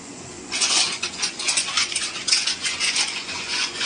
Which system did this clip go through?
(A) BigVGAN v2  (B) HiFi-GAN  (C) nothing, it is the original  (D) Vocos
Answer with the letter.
D